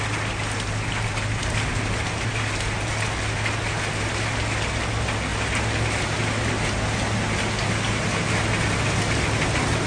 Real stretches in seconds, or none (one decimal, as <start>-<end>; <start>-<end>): 0.0-9.9